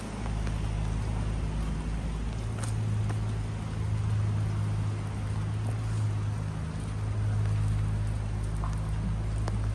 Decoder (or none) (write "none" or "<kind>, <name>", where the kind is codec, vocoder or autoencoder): none